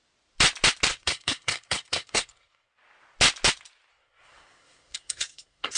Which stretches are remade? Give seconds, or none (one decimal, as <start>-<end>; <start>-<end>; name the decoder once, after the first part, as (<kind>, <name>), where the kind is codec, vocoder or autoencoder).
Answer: 0.9-2.7 (codec, SNAC); 3.9-5.8